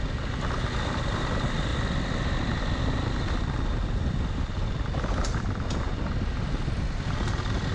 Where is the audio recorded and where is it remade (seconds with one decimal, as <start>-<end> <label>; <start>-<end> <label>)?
0.0-7.7 recorded